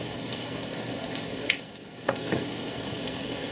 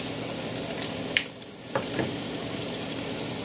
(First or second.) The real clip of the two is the second